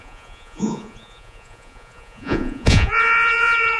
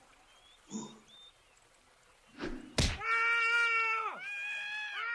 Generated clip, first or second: first